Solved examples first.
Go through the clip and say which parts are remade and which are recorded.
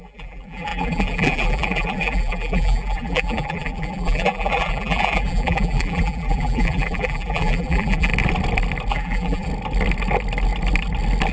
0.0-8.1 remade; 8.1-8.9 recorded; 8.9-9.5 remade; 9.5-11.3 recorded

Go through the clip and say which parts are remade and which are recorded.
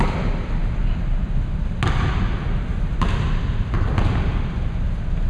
0.0-5.3 recorded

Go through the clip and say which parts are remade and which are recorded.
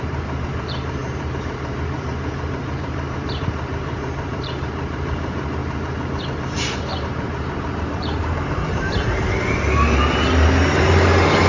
0.0-5.6 remade; 5.6-6.2 recorded; 6.2-11.5 remade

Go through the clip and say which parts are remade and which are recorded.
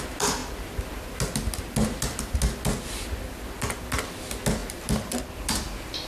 0.0-4.6 recorded; 4.6-5.2 remade; 5.2-6.1 recorded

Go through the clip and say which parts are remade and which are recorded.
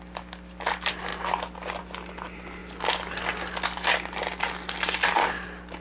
0.0-2.6 recorded; 2.6-3.9 remade; 3.9-5.8 recorded